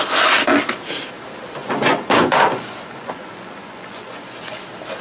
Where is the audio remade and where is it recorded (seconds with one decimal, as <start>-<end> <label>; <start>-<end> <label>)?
0.0-1.6 recorded; 1.6-4.6 remade; 4.6-5.0 recorded